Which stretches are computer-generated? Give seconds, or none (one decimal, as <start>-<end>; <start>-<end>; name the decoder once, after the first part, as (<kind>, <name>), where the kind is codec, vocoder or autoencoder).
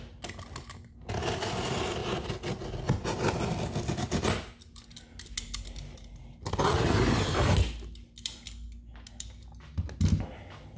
none